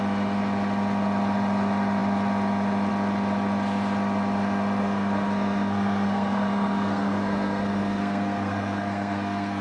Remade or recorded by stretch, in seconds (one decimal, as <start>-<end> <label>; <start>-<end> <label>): 0.0-4.8 recorded; 4.8-9.6 remade